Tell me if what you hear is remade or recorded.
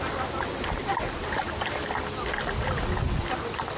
recorded